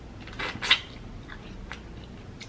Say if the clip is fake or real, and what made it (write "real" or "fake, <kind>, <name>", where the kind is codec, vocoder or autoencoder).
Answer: real